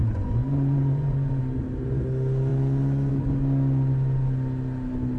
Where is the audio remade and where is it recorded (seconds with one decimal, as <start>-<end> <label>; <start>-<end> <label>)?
0.0-1.4 remade; 1.4-5.2 recorded